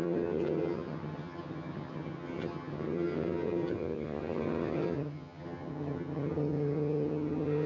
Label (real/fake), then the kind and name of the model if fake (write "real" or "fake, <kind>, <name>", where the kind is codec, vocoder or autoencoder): fake, vocoder, HiFi-GAN